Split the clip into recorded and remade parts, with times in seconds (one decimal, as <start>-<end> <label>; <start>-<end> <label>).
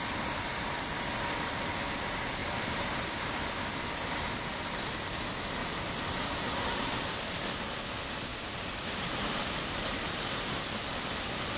0.0-2.4 recorded; 2.4-3.5 remade; 3.5-5.6 recorded; 5.6-7.5 remade; 7.5-8.3 recorded; 8.3-10.6 remade; 10.6-11.6 recorded